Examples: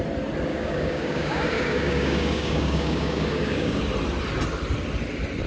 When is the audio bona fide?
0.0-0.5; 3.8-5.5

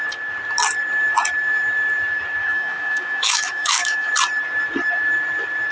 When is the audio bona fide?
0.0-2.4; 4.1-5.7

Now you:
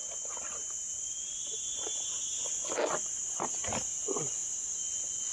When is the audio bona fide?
0.0-5.3

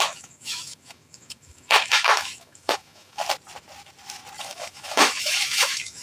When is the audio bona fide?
3.2-4.4

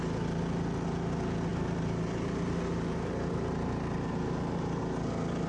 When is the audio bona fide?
0.0-1.5; 4.8-5.5

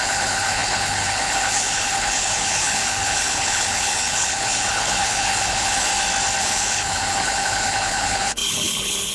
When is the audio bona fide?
5.9-6.4

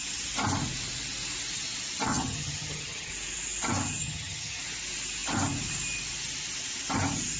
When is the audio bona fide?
0.0-2.1; 3.1-4.0; 4.6-7.4